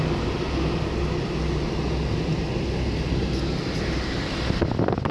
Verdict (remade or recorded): recorded